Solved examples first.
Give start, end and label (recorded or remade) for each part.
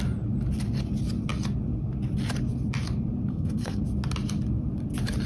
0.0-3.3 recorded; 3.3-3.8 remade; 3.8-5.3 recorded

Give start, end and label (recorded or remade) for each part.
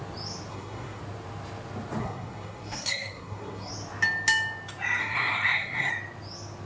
0.0-0.5 recorded; 0.5-1.0 remade; 1.0-2.0 recorded; 2.0-3.7 remade; 3.7-5.0 recorded; 5.0-5.9 remade; 5.9-6.7 recorded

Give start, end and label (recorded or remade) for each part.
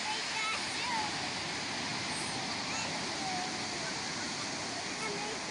0.0-5.5 recorded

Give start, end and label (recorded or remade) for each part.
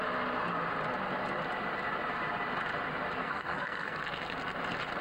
0.0-3.2 recorded; 3.2-4.0 remade; 4.0-5.0 recorded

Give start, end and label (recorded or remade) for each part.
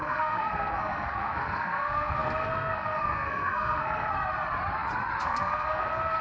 0.0-4.1 remade; 4.1-5.2 recorded; 5.2-6.2 remade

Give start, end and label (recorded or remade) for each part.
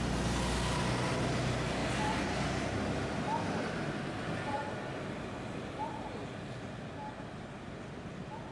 0.0-8.5 recorded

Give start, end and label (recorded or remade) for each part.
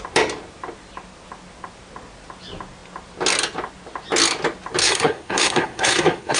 0.0-4.8 recorded; 4.8-6.4 remade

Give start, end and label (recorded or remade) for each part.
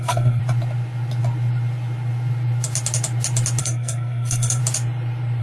0.0-0.4 remade; 0.4-3.6 recorded; 3.6-4.6 remade; 4.6-5.4 recorded